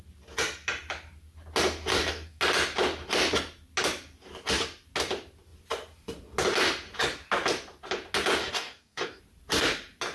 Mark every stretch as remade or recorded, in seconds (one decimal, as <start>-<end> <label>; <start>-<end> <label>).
0.0-1.9 recorded; 1.9-2.4 remade; 2.4-8.4 recorded; 8.4-9.2 remade; 9.2-10.1 recorded